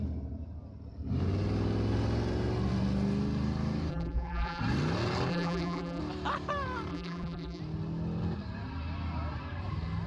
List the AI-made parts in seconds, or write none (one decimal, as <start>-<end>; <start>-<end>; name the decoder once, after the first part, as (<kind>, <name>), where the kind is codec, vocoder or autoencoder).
3.9-4.6 (vocoder, BigVGAN v2); 5.3-6.0; 6.9-7.6